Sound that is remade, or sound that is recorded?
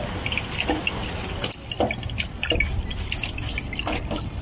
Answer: recorded